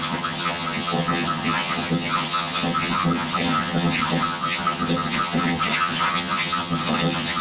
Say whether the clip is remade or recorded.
remade